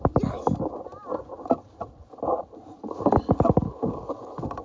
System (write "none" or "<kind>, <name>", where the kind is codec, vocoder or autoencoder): none